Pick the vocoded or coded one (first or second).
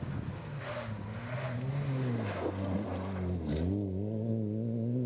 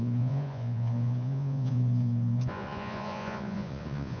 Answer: second